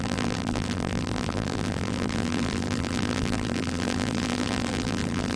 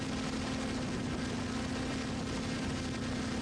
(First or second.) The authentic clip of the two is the second